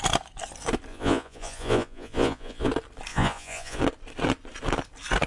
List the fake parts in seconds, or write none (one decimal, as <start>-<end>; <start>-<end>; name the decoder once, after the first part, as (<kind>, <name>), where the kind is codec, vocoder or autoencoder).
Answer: 0.9-2.7 (vocoder, Vocos); 3.1-3.8